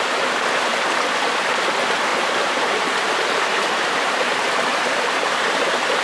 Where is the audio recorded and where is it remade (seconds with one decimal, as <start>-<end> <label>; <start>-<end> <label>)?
0.0-2.1 recorded; 2.1-6.0 remade